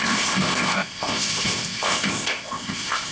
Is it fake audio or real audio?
fake